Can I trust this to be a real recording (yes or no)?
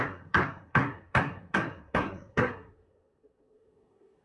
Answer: no